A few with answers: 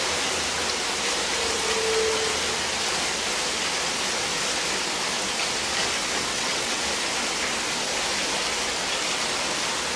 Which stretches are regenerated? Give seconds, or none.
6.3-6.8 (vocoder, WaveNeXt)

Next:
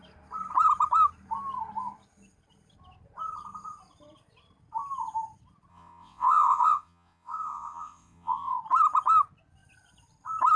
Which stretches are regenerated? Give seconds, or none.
5.7-8.6 (vocoder, WaveNeXt)

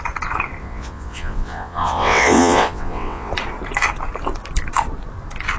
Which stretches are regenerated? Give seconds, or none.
0.6-3.3 (vocoder, WaveNeXt)

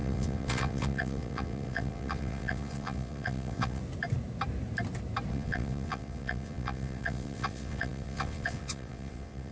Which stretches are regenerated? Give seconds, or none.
0.0-3.8 (vocoder, WaveNeXt); 5.3-9.5

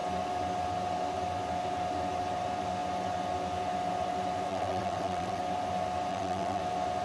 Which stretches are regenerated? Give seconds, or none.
4.5-5.4 (vocoder, WaveNeXt); 6.1-6.6

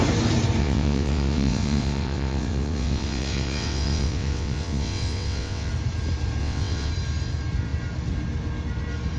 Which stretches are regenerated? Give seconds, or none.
0.6-5.7 (vocoder, WaveNeXt); 6.4-6.9

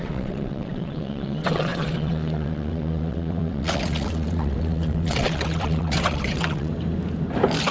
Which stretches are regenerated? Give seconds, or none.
0.0-6.7 (vocoder, WaveNeXt)

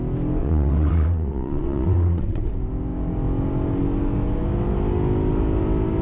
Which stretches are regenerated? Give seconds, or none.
0.4-2.5 (vocoder, WaveNeXt)